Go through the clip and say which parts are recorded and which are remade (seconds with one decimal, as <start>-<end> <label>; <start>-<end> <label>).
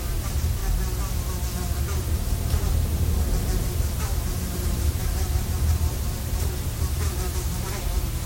0.0-0.6 remade; 0.6-1.8 recorded; 1.8-2.9 remade; 2.9-4.3 recorded; 4.3-8.3 remade